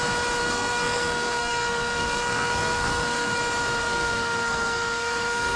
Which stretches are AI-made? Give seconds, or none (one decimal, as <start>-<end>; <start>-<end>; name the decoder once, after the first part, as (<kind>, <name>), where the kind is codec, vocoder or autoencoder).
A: 0.4-3.4 (codec, SNAC); 3.8-5.6